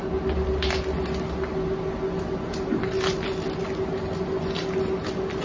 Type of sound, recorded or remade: recorded